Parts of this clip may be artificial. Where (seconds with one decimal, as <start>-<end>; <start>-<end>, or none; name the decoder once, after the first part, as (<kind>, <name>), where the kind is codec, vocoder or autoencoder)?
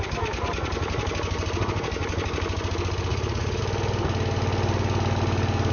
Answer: 3.1-3.6 (vocoder, Vocos)